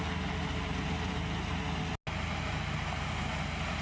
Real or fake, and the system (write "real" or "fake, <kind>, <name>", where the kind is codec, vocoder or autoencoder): real